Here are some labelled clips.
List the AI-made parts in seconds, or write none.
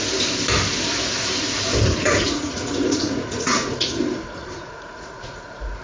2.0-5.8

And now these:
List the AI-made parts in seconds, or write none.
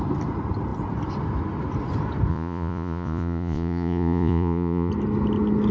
2.3-4.9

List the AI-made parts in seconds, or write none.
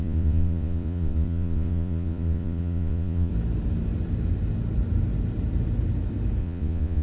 0.0-3.3; 6.4-7.0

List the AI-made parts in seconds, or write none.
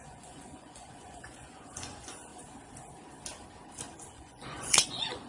0.0-2.3; 4.1-5.3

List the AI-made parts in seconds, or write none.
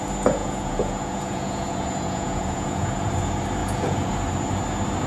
0.4-3.1; 3.6-4.1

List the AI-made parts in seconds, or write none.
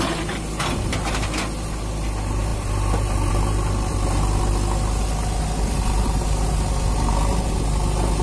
none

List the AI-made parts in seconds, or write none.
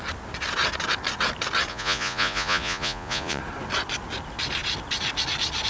1.7-3.4